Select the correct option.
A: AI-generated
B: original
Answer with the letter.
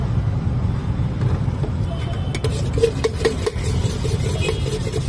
B